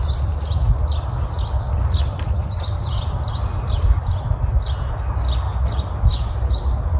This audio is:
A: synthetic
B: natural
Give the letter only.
B